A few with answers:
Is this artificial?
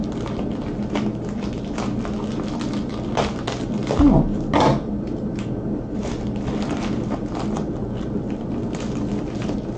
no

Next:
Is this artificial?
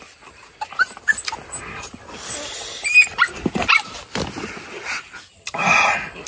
no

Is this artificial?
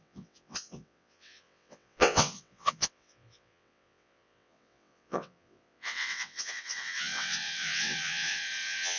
yes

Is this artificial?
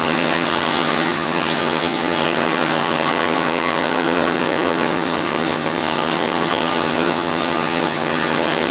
yes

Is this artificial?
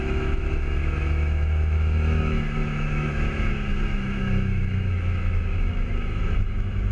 yes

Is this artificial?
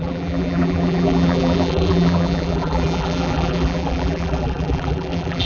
yes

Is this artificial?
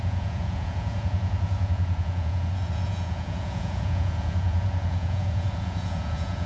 yes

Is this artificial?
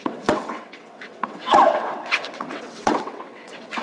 yes